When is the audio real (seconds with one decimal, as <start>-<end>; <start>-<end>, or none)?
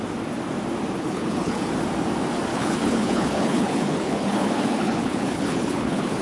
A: 0.0-1.0; 1.7-2.5